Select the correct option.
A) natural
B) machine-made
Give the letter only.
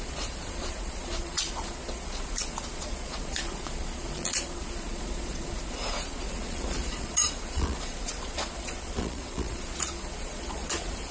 B